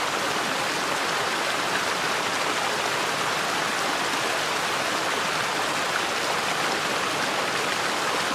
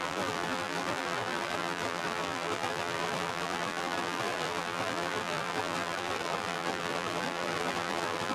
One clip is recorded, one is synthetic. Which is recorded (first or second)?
first